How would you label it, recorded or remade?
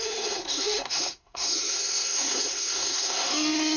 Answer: remade